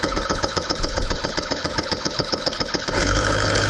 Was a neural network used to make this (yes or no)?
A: yes